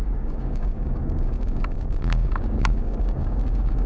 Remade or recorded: remade